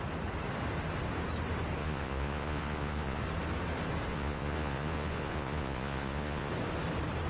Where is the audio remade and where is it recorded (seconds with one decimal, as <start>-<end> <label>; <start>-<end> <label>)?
0.0-1.8 recorded; 1.8-3.2 remade; 3.2-4.1 recorded; 4.1-6.5 remade; 6.5-7.3 recorded